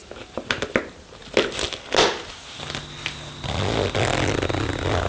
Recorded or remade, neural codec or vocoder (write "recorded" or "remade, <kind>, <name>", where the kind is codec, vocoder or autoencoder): recorded